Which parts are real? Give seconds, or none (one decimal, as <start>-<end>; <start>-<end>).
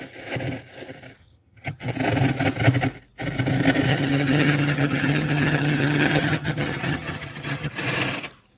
0.0-1.2; 1.9-3.9; 7.7-8.6